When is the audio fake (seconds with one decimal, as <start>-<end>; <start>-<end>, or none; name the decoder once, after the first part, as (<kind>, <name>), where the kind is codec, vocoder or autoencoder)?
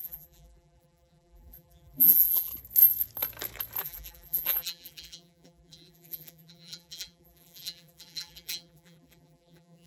0.0-2.5 (vocoder, BigVGAN v2); 3.8-9.9